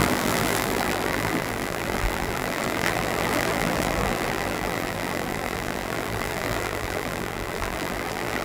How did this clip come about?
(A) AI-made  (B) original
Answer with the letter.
A